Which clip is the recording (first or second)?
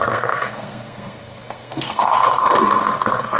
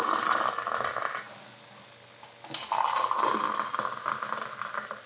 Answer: second